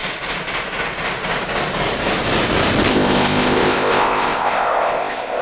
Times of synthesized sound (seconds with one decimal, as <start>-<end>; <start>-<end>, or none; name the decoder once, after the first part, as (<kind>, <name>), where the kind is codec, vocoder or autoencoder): 2.9-5.4 (codec, ZipCodec)